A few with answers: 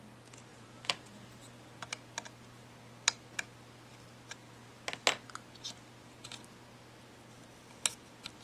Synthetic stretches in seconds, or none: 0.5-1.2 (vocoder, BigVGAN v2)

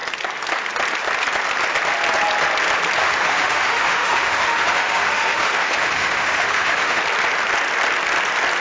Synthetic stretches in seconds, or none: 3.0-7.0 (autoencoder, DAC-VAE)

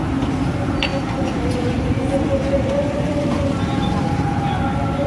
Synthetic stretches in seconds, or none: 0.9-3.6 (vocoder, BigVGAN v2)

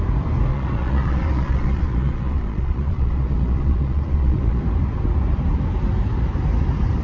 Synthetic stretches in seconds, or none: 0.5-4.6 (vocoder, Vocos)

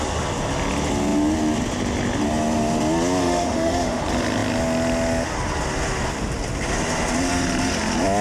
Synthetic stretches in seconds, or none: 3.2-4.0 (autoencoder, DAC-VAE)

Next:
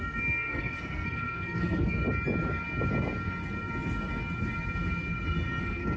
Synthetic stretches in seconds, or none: 0.0-2.0 (codec, SNAC); 5.6-6.0

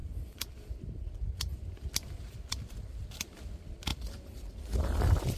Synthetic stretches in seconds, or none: 0.0-3.2 (vocoder, BigVGAN v2); 3.9-5.4

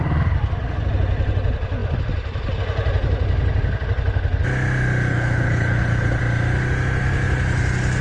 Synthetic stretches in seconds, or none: 5.1-6.2 (codec, HILCodec)